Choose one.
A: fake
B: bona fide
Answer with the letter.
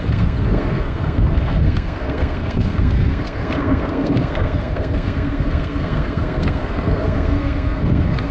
A